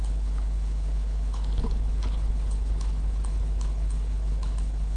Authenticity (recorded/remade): remade